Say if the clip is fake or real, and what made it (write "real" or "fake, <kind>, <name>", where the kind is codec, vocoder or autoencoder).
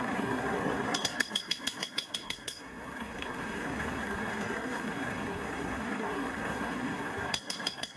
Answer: fake, codec, SNAC